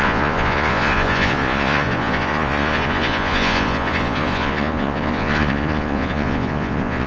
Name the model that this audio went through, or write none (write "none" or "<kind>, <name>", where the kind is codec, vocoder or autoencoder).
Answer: vocoder, Vocos